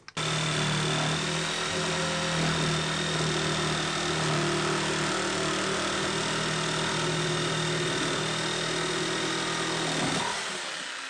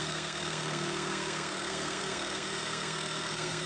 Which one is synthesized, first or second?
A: second